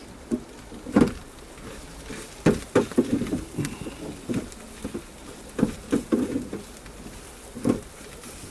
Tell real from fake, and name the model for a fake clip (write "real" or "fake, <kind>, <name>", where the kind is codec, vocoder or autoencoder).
real